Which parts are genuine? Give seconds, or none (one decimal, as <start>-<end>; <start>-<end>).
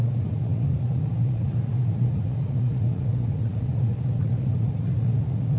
none